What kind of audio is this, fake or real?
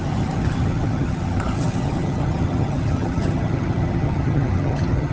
fake